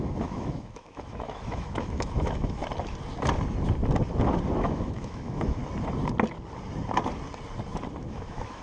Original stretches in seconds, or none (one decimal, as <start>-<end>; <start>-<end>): 2.6-4.6; 5.6-8.0